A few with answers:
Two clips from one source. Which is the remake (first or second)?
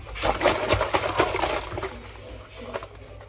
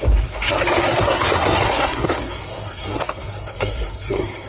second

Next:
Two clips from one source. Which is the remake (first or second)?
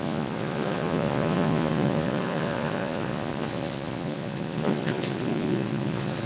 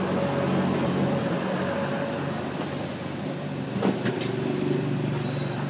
first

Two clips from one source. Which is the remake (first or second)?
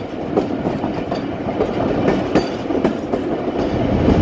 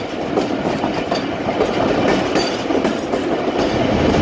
second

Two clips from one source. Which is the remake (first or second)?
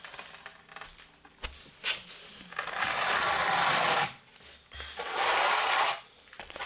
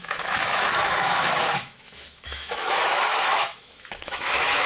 second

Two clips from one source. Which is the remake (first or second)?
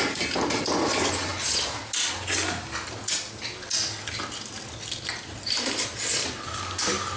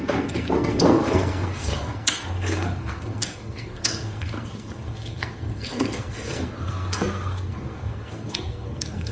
second